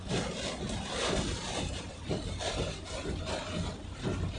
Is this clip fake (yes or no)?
no